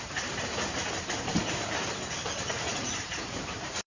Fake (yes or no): yes